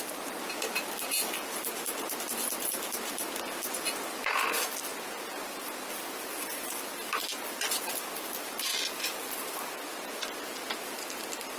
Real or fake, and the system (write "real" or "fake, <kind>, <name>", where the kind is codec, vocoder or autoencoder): real